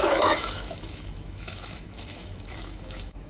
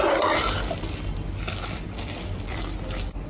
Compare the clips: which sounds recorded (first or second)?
second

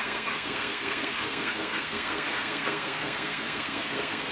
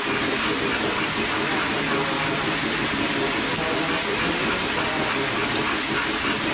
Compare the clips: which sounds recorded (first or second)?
second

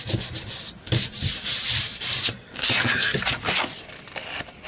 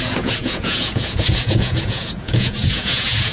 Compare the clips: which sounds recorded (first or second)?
first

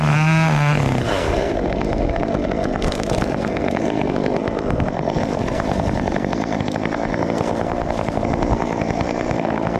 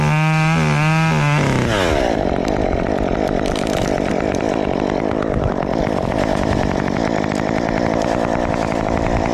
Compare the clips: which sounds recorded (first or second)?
second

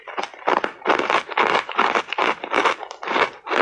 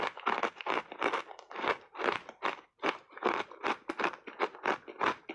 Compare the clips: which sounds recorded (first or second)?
first